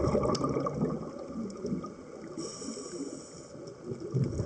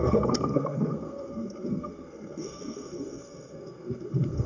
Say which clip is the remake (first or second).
second